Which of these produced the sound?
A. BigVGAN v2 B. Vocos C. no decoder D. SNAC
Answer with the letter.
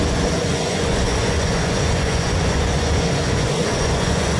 B